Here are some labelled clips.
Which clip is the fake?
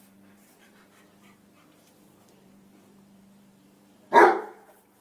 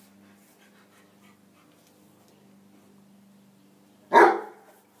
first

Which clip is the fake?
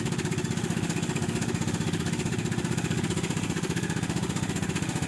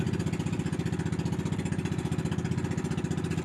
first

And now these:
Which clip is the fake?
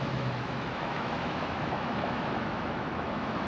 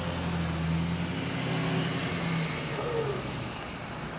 first